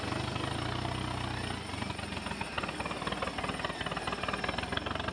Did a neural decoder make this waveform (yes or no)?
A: no